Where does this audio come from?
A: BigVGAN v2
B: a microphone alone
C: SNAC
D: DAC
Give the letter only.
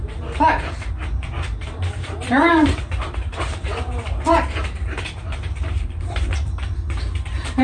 A